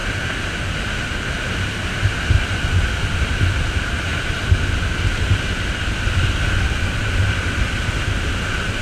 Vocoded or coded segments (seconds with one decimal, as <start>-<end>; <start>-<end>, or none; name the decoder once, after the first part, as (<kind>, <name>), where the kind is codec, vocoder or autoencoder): none